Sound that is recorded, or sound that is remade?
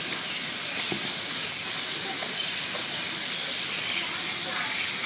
recorded